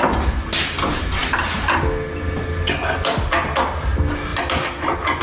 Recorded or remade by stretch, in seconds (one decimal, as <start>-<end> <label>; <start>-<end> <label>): 0.0-4.3 recorded; 4.3-5.2 remade